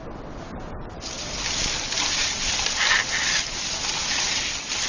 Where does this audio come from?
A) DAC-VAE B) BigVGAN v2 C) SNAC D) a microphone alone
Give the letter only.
D